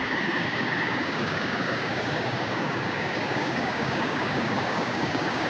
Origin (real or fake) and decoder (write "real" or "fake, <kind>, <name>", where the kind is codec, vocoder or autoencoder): fake, codec, DAC